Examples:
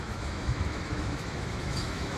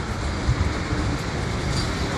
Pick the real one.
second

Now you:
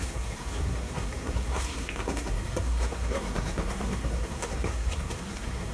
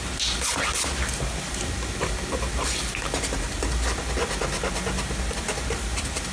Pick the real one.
second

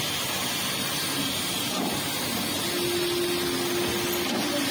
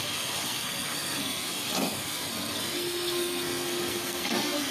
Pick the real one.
first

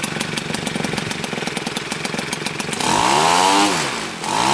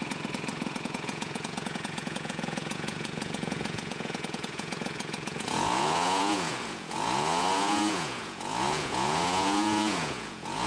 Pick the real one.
first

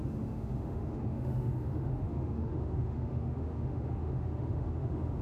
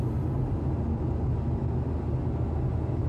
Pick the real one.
second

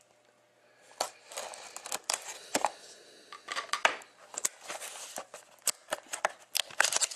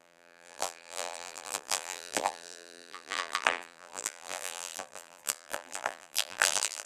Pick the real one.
first